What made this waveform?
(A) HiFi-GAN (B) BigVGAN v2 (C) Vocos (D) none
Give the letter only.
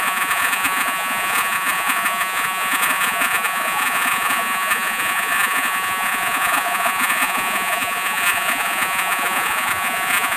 C